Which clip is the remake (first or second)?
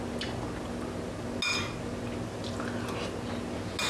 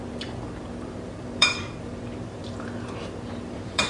second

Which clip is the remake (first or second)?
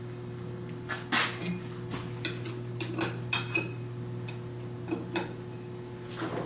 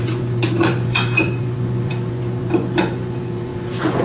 second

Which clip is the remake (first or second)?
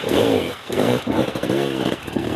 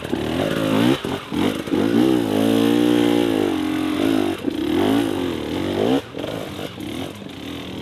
first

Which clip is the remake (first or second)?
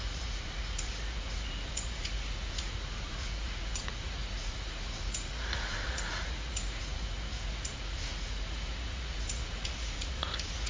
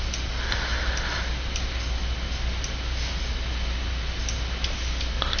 first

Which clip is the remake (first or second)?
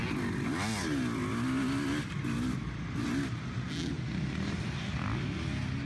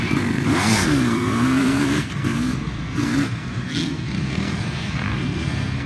second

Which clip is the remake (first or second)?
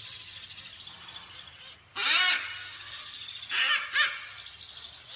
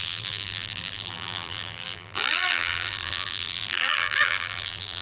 second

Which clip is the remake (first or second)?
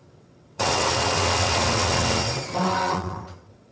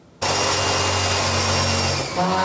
first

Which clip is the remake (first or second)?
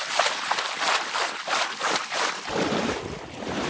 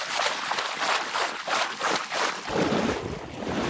first